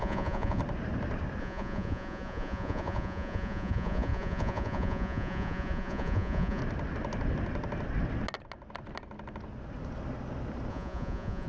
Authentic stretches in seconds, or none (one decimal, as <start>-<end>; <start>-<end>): 0.6-1.4; 6.6-10.7